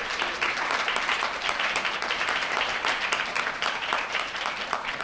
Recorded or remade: remade